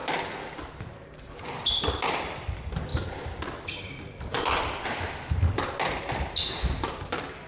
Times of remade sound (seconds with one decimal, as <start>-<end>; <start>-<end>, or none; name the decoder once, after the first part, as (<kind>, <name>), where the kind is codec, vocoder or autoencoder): 0.7-2.9 (vocoder, BigVGAN v2)